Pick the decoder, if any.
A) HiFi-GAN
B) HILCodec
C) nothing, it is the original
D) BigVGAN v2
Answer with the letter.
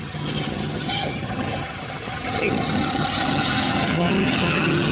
A